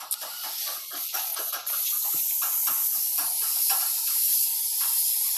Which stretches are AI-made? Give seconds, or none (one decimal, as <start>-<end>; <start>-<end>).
none